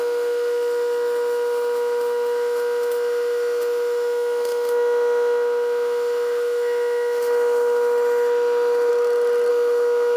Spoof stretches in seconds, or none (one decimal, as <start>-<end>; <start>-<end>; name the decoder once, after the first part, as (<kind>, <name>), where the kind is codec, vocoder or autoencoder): 0.0-8.9 (autoencoder, DAC-VAE); 9.5-10.2